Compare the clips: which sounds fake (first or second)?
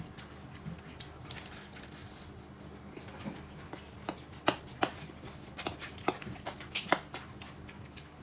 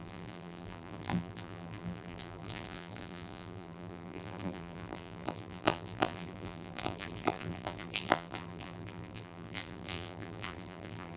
second